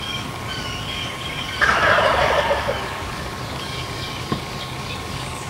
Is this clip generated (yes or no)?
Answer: yes